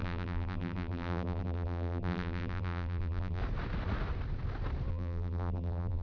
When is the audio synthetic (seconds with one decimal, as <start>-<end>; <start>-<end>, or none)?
0.0-3.4; 4.9-6.0